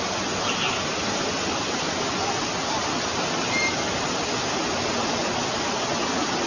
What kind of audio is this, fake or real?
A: real